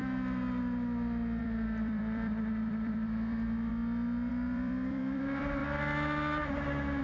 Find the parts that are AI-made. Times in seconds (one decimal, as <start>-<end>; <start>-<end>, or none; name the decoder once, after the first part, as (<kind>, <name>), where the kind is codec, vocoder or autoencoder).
1.4-3.7 (vocoder, BigVGAN v2); 4.3-5.6